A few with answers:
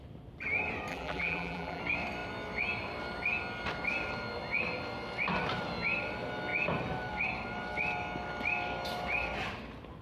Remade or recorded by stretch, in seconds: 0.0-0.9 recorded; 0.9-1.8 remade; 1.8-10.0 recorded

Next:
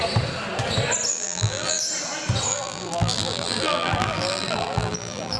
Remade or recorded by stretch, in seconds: 0.0-1.1 recorded; 1.1-1.8 remade; 1.8-2.5 recorded; 2.5-5.4 remade